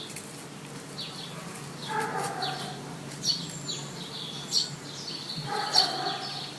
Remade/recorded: recorded